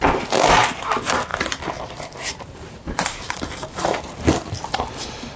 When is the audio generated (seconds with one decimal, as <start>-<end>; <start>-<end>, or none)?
1.3-4.5